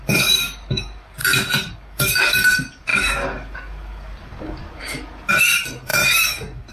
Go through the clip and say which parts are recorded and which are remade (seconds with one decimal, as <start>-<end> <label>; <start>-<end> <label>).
0.0-1.2 remade; 1.2-1.7 recorded; 1.7-6.7 remade